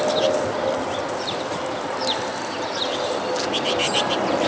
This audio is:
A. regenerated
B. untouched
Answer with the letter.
A